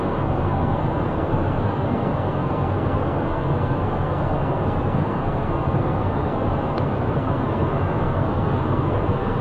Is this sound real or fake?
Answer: fake